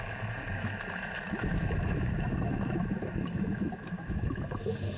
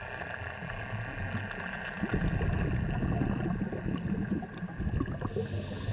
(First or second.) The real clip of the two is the second